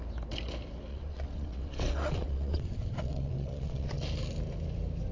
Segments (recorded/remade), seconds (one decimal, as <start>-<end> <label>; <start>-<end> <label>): 0.0-0.9 recorded; 0.9-4.0 remade; 4.0-5.1 recorded